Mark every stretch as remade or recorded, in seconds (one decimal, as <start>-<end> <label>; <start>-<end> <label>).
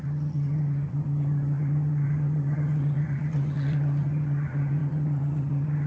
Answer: 0.0-5.9 remade